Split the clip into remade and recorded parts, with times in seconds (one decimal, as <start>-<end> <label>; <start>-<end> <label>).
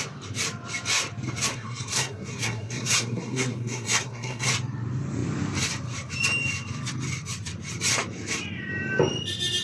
0.0-1.5 recorded; 1.5-4.5 remade; 4.5-9.6 recorded